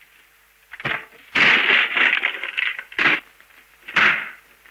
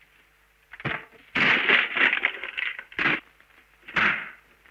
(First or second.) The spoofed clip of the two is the second